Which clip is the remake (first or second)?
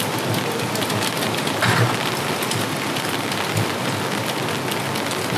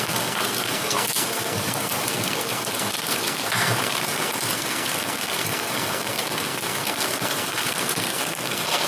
second